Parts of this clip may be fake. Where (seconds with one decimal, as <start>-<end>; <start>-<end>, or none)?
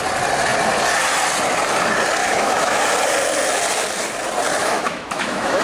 2.2-2.8; 4.6-5.6